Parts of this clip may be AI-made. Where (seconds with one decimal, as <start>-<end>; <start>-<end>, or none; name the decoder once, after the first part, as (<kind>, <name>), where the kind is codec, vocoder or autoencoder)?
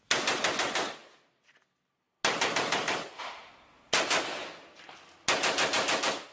none